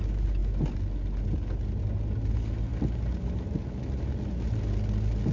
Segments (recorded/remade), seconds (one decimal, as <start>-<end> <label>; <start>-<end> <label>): 0.0-5.3 recorded